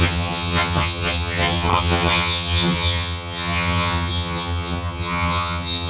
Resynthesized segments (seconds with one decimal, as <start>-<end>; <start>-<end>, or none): 0.0-5.9